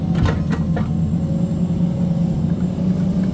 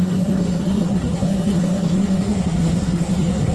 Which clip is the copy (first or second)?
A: second